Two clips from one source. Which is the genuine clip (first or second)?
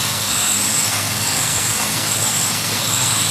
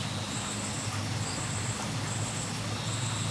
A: second